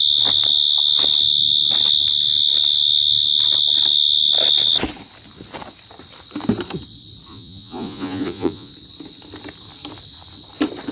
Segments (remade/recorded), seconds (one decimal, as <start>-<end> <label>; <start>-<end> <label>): 0.0-7.3 recorded; 7.3-8.7 remade; 8.7-10.9 recorded